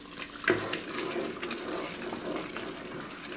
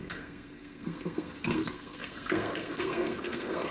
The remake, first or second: second